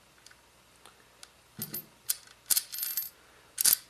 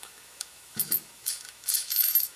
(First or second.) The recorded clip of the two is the first